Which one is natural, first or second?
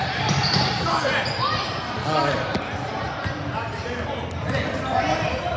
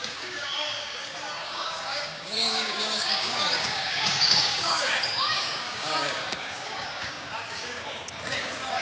first